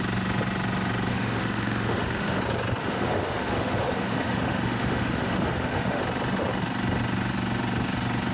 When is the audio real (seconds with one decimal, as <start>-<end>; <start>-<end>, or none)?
0.0-1.1; 2.4-2.8; 6.0-8.3